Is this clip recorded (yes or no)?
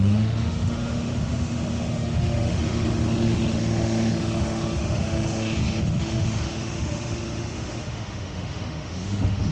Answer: no